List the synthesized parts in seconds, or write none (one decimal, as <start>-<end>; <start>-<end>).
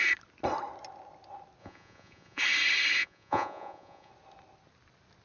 1.6-2.4; 3.0-4.1